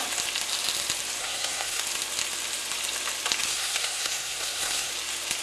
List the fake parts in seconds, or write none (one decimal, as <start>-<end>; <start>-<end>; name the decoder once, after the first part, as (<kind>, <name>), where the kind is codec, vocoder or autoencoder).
1.2-1.8 (codec, SNAC); 3.5-4.9